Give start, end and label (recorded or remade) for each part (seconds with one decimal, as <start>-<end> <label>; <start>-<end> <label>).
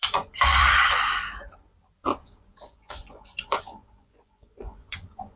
0.0-0.6 remade; 0.6-2.1 recorded; 2.1-5.4 remade